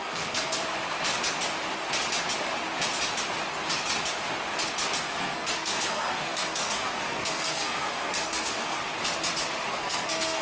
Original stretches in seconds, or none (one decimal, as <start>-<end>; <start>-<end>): 0.6-5.0; 8.8-9.7